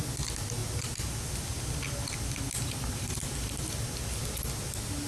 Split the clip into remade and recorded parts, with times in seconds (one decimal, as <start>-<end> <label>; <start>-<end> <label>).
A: 0.0-5.1 recorded